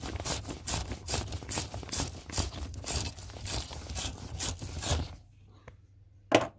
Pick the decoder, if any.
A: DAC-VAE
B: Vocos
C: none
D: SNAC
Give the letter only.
C